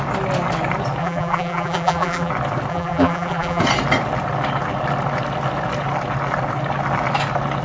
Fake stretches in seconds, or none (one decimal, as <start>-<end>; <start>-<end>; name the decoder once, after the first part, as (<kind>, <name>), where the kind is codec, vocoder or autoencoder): 1.0-2.3 (vocoder, BigVGAN v2); 2.7-3.6